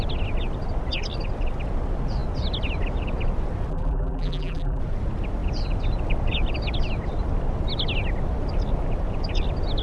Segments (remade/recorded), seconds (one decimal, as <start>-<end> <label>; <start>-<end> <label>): 0.0-3.7 recorded; 3.7-4.8 remade; 4.8-9.8 recorded